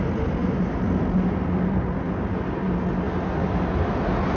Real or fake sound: real